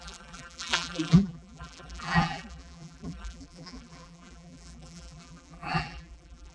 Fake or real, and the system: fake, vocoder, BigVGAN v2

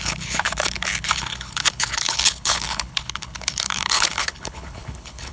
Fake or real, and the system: fake, codec, HILCodec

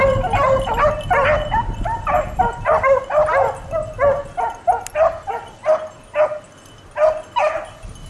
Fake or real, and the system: real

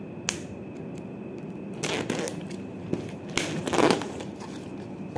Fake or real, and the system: real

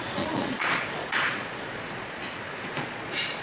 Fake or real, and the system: fake, vocoder, Vocos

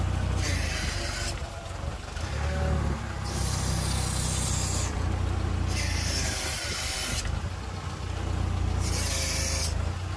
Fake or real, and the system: real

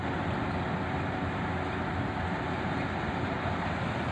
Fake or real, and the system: real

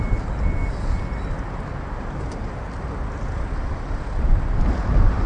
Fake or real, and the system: real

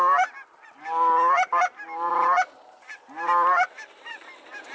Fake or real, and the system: real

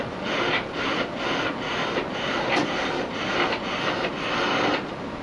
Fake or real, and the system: real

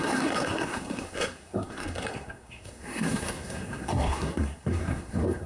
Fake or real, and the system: fake, codec, SNAC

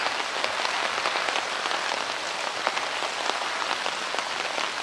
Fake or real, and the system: real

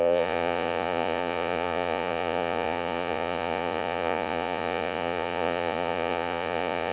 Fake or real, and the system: fake, vocoder, Vocos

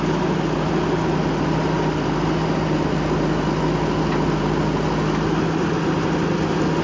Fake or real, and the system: real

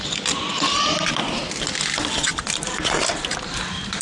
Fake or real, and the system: fake, vocoder, BigVGAN v2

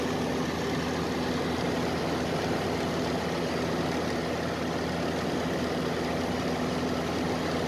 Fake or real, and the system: real